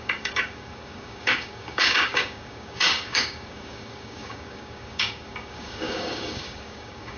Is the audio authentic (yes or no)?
no